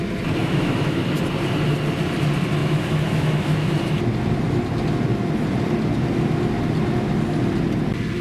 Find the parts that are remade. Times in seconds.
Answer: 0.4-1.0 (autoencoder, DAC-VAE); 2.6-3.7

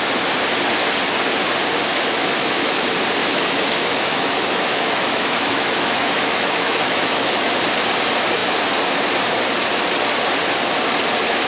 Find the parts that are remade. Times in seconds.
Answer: 1.9-2.8 (autoencoder, DAC-VAE); 3.2-7.6